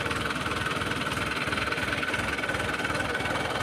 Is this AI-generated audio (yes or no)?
no